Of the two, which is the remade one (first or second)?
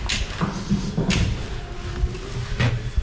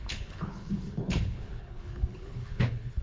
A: second